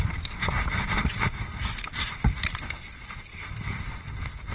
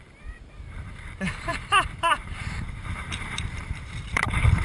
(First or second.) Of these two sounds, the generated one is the second